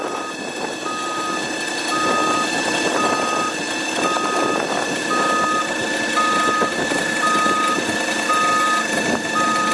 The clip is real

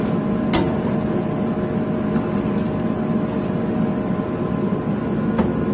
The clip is real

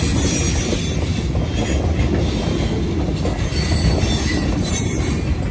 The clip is real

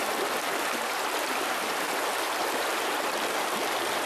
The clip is real